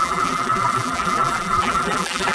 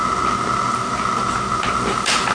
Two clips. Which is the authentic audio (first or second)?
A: second